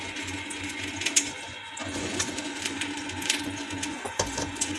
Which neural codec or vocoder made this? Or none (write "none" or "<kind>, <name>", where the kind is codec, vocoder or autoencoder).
vocoder, Vocos